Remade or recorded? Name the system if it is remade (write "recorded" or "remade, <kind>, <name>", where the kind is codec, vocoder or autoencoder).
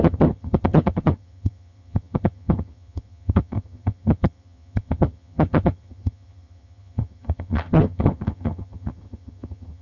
remade, vocoder, HiFi-GAN